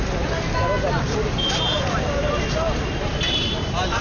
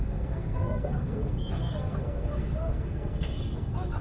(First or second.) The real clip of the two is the first